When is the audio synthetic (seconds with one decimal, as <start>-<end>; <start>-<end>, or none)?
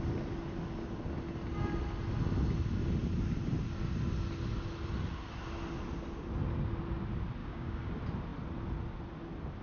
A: 7.4-7.9